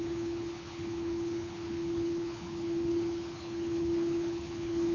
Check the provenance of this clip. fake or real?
fake